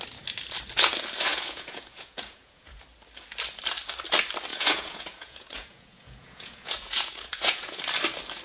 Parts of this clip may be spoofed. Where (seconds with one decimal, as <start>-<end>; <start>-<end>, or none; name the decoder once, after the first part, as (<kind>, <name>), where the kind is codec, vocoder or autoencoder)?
1.3-2.8 (vocoder, Vocos); 4.5-7.8